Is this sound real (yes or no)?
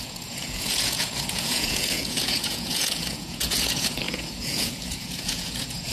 no